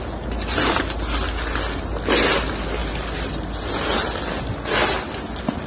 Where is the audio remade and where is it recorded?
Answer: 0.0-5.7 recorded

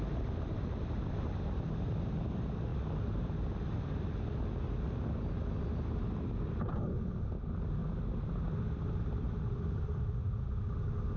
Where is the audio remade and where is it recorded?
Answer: 0.0-11.2 recorded

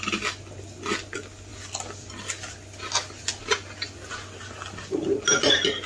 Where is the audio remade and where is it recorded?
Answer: 0.0-5.9 recorded

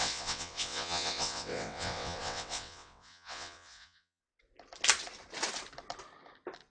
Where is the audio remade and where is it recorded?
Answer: 0.0-4.2 remade; 4.2-6.7 recorded

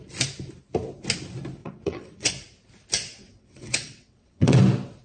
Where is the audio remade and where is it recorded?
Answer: 0.0-1.6 recorded; 1.6-2.3 remade; 2.3-3.3 recorded; 3.3-4.6 remade; 4.6-5.0 recorded

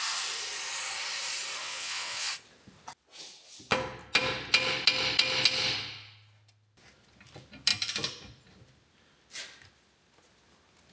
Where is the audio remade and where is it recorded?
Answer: 0.0-1.6 recorded; 1.6-2.3 remade; 2.3-10.9 recorded

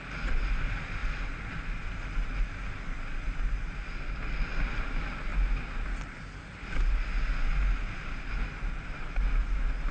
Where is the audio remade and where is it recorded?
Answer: 0.0-9.9 recorded